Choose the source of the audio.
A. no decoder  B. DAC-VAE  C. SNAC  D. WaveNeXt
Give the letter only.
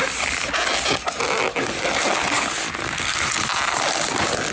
A